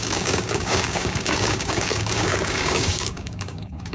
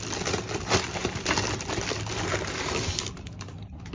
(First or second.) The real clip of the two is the second